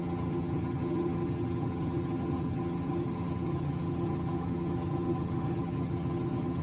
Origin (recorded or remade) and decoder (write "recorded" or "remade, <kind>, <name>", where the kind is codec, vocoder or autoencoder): remade, vocoder, HiFi-GAN